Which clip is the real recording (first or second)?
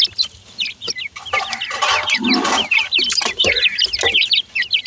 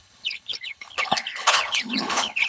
first